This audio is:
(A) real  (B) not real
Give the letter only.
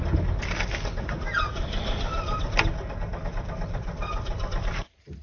A